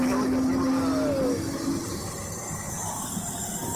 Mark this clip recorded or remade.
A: recorded